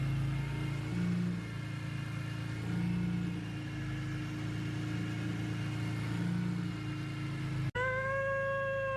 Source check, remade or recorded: recorded